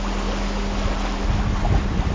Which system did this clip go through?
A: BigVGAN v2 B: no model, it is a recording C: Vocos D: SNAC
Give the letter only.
B